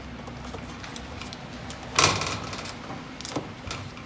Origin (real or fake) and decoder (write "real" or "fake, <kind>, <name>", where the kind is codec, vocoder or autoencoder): real